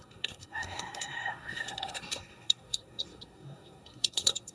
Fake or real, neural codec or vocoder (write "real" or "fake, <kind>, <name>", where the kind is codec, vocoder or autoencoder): fake, codec, SNAC